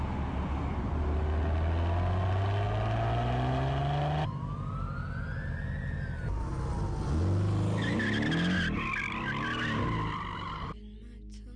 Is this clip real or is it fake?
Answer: real